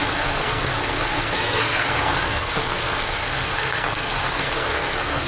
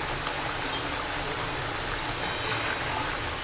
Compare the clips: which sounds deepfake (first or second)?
first